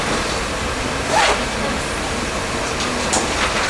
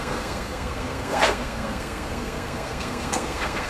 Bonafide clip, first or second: first